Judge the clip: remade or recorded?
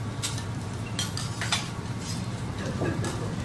remade